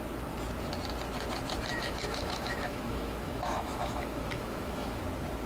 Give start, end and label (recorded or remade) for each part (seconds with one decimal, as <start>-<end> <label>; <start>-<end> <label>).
0.0-1.7 recorded; 1.7-5.0 remade; 5.0-5.5 recorded